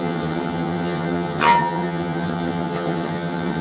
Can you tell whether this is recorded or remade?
remade